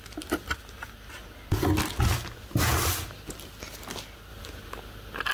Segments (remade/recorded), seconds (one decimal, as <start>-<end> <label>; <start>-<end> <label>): 0.0-5.3 recorded

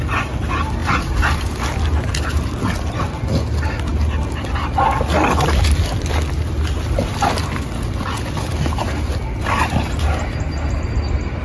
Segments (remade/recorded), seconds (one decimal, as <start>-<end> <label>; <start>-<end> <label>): 0.0-11.4 recorded

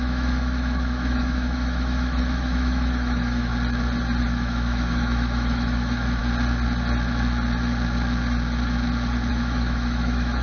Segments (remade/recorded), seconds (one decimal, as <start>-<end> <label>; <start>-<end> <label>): 0.0-3.5 remade; 3.5-4.2 recorded; 4.2-6.2 remade; 6.2-9.3 recorded; 9.3-10.4 remade